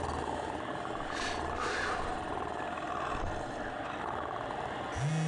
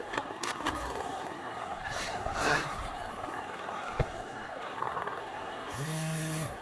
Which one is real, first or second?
first